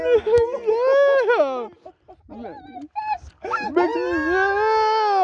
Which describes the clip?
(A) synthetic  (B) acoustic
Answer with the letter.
B